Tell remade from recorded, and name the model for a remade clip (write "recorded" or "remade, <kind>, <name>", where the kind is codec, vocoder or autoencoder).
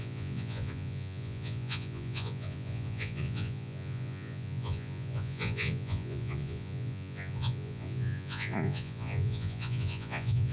remade, vocoder, Vocos